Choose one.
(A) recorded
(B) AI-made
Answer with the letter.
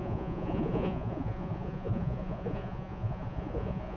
B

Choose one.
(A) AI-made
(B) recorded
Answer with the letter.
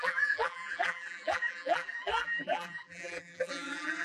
A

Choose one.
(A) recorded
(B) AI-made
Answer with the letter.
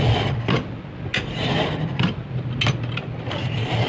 A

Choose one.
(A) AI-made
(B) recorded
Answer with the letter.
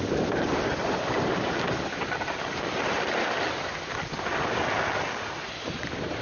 B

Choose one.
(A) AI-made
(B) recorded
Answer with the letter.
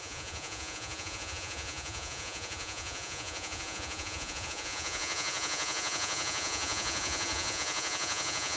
A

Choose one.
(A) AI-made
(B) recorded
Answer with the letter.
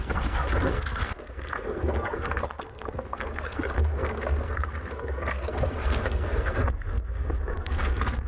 A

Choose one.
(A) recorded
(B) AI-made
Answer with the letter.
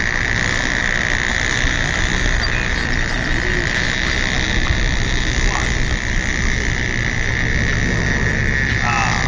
A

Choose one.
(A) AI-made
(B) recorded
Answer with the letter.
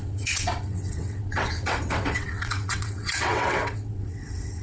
A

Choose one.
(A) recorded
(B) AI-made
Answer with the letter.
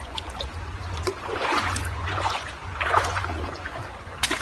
B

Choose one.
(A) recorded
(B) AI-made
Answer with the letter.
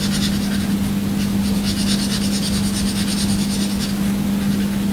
A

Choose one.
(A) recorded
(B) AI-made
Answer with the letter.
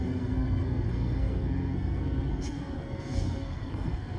B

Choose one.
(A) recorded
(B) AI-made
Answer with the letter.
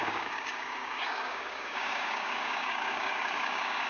B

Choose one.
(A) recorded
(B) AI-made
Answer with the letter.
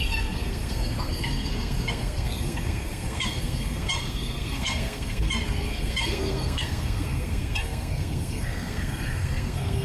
B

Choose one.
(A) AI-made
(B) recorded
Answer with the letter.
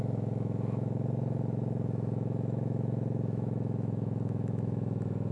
A